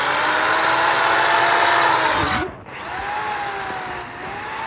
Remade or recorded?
recorded